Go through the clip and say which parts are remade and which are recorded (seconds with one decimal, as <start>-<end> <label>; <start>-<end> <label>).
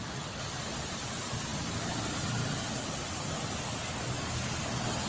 0.0-5.1 recorded